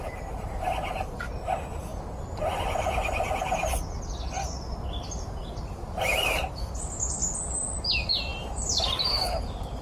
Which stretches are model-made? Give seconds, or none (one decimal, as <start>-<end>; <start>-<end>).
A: none